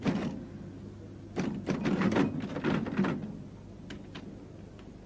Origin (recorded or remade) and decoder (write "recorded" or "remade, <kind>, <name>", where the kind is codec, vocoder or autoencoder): recorded